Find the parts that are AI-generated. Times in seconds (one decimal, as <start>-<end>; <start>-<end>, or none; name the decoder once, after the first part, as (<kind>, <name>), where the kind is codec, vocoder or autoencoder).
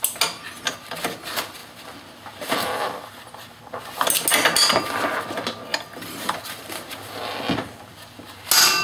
5.7-6.7 (vocoder, BigVGAN v2)